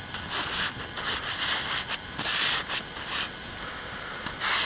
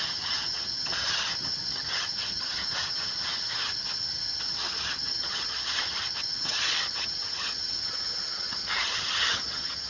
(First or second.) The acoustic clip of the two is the first